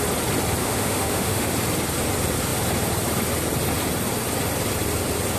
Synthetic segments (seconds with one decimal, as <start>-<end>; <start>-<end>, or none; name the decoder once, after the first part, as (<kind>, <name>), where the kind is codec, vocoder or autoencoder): 0.6-1.5 (autoencoder, DAC-VAE)